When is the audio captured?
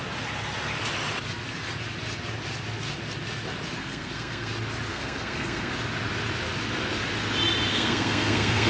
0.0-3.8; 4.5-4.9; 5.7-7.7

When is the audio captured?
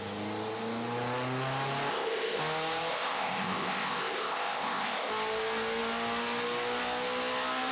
0.0-1.9; 2.4-2.9; 5.1-7.7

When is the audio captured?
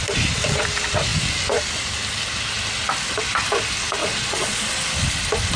0.0-4.0; 4.7-5.6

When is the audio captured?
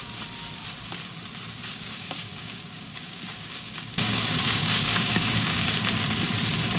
0.0-1.7; 5.8-6.8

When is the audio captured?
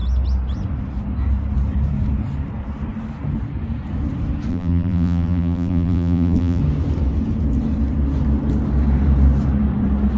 0.0-4.5; 6.6-10.2